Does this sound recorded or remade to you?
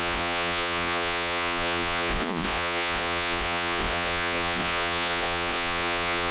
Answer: remade